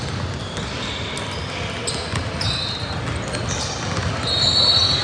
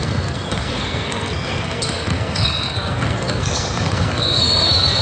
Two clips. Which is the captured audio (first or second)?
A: first